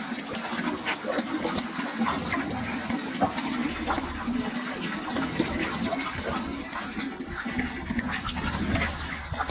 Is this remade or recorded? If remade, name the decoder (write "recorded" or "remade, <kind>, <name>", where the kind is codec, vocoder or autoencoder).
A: recorded